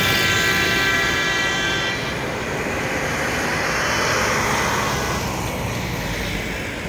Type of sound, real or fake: real